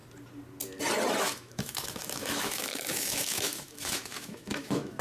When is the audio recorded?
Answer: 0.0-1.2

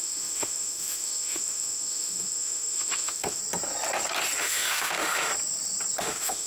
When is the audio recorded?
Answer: 3.4-4.4; 5.3-6.0

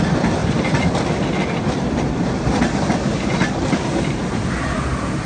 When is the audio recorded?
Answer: 0.0-5.3

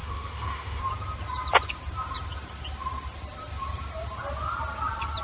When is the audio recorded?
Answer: 0.8-5.2

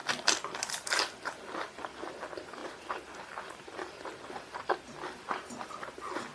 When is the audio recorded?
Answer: 0.0-6.3